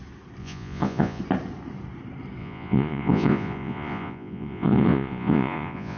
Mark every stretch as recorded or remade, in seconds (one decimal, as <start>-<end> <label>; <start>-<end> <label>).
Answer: 0.0-0.4 recorded; 0.4-1.2 remade; 1.2-2.4 recorded; 2.4-6.0 remade